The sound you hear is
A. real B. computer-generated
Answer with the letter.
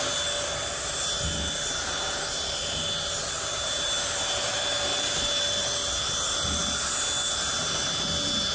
A